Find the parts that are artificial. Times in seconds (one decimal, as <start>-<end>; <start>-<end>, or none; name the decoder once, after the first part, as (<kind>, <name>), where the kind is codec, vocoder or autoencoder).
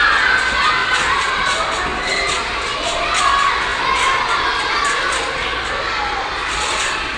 0.8-1.3 (vocoder, Vocos)